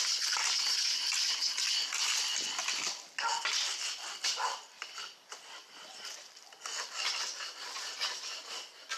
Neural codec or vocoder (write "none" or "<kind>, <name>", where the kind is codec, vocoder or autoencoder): none